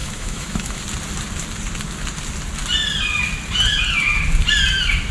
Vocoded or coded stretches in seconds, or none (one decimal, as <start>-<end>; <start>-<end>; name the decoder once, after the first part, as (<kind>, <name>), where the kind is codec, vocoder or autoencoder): 0.0-0.8 (autoencoder, DAC-VAE)